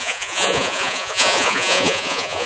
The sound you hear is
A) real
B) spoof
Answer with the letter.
B